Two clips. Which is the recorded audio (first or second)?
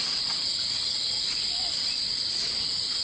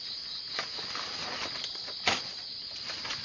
second